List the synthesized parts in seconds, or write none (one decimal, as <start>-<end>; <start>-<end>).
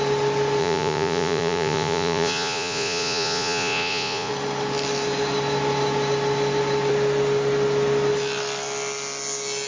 0.6-4.3